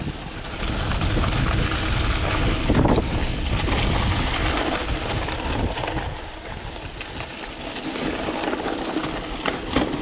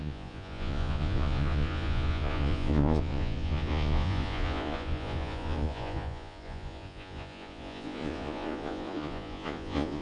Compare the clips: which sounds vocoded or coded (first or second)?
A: second